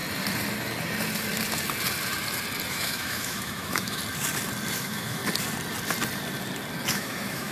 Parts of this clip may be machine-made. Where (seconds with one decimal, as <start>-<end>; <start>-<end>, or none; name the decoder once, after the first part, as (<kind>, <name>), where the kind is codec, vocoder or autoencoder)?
2.7-4.0 (autoencoder, DAC-VAE); 4.8-5.2; 6.9-7.5